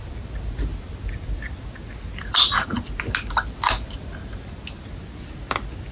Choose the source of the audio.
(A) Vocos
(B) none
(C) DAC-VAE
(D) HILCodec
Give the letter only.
B